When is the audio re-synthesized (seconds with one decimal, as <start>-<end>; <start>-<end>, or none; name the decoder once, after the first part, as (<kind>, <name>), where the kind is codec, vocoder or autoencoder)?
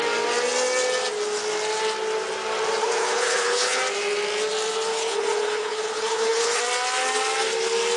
2.8-3.8 (codec, HILCodec); 4.9-6.6